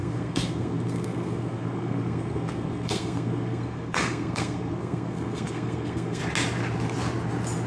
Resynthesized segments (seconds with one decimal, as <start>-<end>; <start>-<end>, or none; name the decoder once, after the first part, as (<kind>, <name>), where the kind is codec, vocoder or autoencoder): 0.0-6.2 (codec, SNAC)